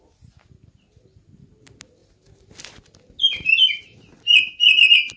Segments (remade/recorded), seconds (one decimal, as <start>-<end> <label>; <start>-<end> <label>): 0.0-5.2 recorded